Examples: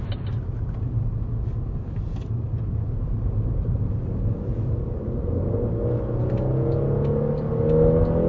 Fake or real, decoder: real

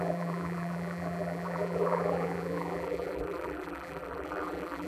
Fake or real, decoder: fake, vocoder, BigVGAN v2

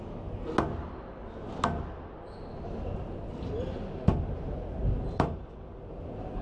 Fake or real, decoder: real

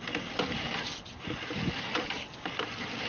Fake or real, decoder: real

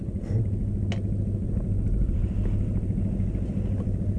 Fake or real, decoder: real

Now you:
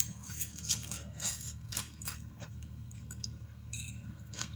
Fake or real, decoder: fake, codec, SNAC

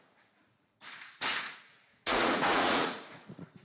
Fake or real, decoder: fake, vocoder, Vocos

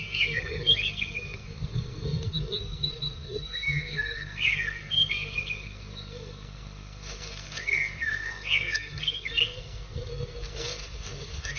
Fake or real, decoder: fake, codec, SNAC